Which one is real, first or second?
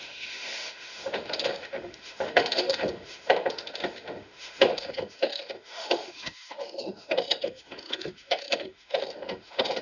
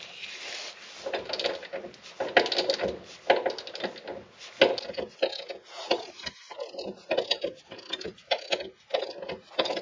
second